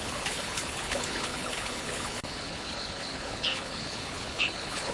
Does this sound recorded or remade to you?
remade